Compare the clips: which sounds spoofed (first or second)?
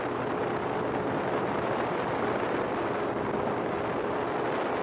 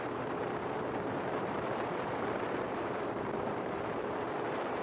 second